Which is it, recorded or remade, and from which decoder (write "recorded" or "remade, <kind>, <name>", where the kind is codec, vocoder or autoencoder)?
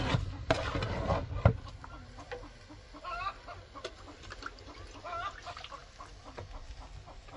recorded